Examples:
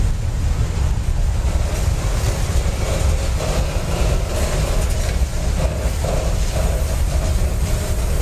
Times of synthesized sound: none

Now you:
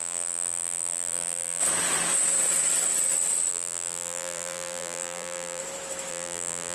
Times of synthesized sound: 0.0-1.6 (vocoder, BigVGAN v2); 3.5-5.6; 6.1-6.7

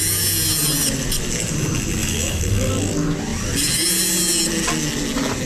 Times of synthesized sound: 2.0-2.7 (autoencoder, DAC-VAE)

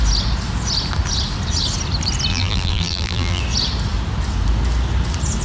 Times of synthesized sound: 2.3-3.4 (vocoder, BigVGAN v2)

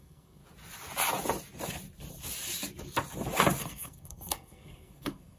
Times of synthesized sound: 0.0-0.4 (codec, SNAC); 3.6-5.4

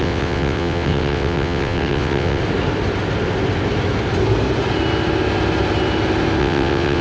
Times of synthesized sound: 0.0-2.4 (vocoder, WaveNeXt); 6.4-7.0

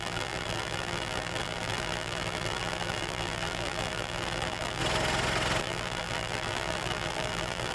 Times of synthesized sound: 0.0-4.8 (vocoder, BigVGAN v2); 5.6-7.7